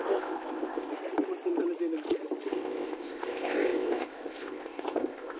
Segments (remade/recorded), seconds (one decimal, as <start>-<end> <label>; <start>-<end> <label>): 0.0-0.9 remade; 0.9-2.5 recorded; 2.5-5.4 remade